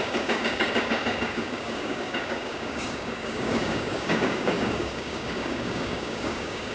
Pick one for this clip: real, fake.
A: fake